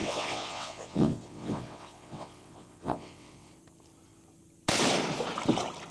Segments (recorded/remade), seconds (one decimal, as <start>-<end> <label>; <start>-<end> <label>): 0.0-3.5 remade; 3.5-5.9 recorded